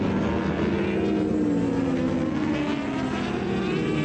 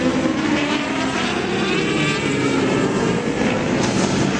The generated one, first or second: second